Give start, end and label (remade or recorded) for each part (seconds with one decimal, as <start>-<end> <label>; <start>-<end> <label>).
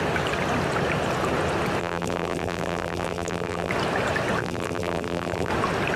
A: 0.0-1.8 recorded; 1.8-3.7 remade; 3.7-4.4 recorded; 4.4-5.5 remade; 5.5-6.0 recorded